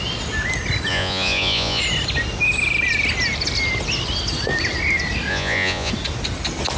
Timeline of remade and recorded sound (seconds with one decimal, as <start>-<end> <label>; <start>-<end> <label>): 0.0-0.9 recorded; 0.9-1.8 remade; 1.8-5.3 recorded; 5.3-5.9 remade; 5.9-6.8 recorded